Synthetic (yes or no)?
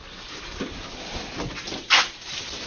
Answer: no